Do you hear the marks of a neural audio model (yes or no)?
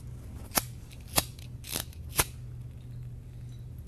no